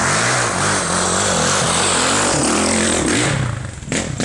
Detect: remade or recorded recorded